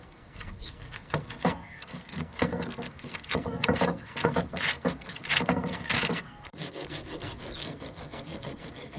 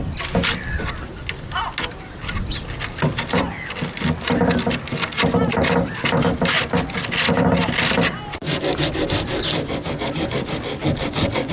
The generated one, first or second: first